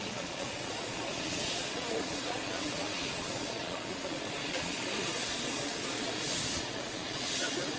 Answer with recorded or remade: remade